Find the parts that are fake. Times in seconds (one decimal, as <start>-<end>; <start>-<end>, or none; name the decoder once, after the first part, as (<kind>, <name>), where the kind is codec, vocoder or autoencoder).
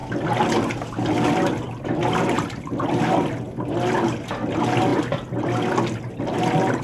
none